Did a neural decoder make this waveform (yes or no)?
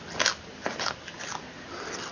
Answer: no